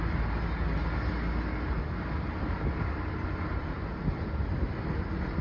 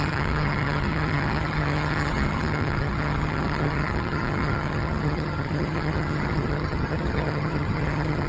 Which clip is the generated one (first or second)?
second